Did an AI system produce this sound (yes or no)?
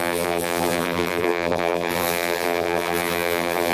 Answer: yes